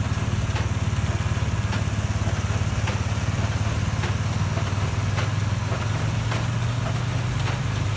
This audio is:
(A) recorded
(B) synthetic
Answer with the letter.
A